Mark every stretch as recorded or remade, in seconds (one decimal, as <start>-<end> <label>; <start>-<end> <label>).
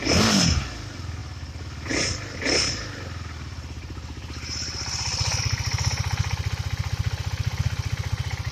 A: 0.0-8.5 recorded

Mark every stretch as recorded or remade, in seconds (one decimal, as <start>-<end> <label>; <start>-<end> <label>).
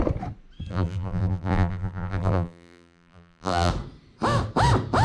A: 0.0-0.7 recorded; 0.7-3.7 remade; 3.7-5.0 recorded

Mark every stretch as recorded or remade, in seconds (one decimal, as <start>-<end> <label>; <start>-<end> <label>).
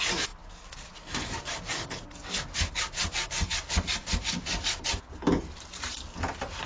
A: 0.0-2.2 remade; 2.2-5.4 recorded; 5.4-6.7 remade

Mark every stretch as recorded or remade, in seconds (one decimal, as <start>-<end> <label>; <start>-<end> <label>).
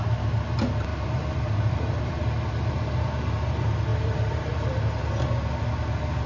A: 0.0-0.9 recorded; 0.9-3.5 remade; 3.5-3.9 recorded; 3.9-5.1 remade; 5.1-6.3 recorded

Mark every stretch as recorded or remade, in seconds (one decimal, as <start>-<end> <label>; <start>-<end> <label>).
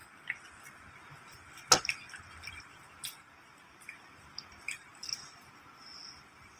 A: 0.0-4.9 recorded; 4.9-5.6 remade; 5.6-6.6 recorded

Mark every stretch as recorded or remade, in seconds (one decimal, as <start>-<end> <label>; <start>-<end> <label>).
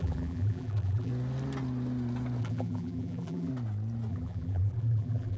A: 0.0-1.1 remade; 1.1-2.4 recorded; 2.4-3.5 remade; 3.5-4.1 recorded; 4.1-5.4 remade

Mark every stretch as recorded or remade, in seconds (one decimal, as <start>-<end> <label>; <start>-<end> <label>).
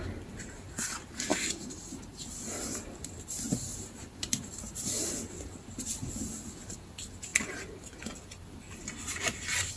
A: 0.0-1.3 recorded; 1.3-3.2 remade; 3.2-3.7 recorded; 3.7-5.1 remade; 5.1-9.8 recorded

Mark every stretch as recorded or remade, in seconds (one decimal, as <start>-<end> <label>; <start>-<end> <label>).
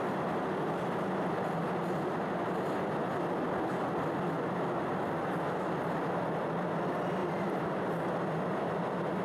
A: 0.0-7.2 recorded; 7.2-8.4 remade; 8.4-9.2 recorded